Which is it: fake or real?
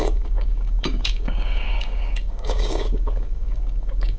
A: fake